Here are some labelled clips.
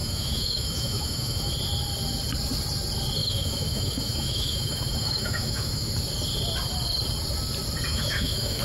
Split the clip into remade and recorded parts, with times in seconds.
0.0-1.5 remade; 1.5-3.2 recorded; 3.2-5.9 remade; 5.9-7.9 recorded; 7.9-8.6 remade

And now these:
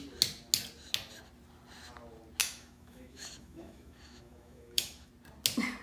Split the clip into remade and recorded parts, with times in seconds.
0.0-2.4 recorded; 2.4-5.1 remade; 5.1-5.8 recorded

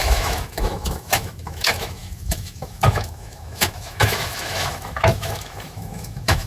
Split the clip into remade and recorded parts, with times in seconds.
0.0-6.5 remade

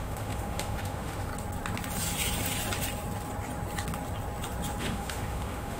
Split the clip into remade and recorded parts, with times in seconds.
0.0-1.3 remade; 1.3-4.8 recorded; 4.8-5.8 remade

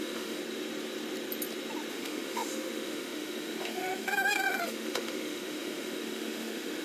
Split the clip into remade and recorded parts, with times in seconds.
0.0-0.4 remade; 0.4-1.9 recorded; 1.9-6.8 remade